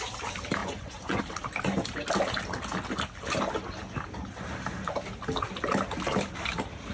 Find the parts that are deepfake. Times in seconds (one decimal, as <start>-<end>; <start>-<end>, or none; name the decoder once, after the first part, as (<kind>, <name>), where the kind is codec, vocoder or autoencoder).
0.6-1.2 (vocoder, Vocos)